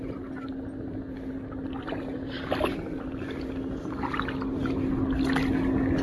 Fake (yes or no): no